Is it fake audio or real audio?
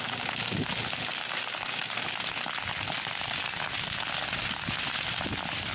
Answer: real